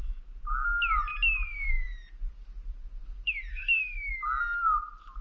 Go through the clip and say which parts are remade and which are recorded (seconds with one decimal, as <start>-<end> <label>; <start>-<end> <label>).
0.0-3.5 recorded; 3.5-4.1 remade; 4.1-5.2 recorded